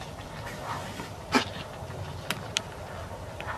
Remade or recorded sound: recorded